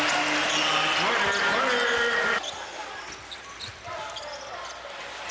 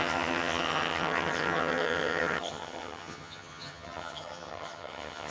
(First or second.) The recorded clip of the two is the first